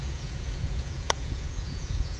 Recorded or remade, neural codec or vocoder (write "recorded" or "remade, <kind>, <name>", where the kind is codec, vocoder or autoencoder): remade, vocoder, Vocos